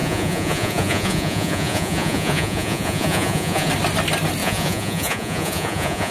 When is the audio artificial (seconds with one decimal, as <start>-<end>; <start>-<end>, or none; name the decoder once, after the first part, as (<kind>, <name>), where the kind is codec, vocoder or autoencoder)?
0.0-3.7 (vocoder, Vocos); 4.4-6.1